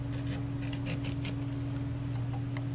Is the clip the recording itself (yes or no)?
yes